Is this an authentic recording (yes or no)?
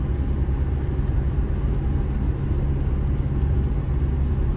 yes